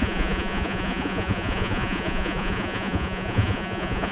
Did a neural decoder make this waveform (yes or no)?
yes